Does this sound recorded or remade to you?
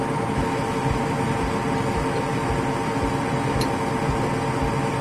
recorded